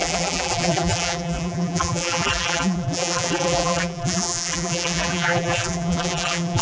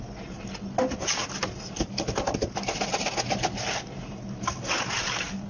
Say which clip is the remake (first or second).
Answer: first